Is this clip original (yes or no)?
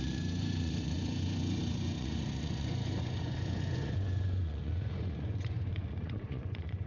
no